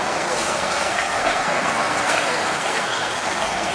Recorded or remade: remade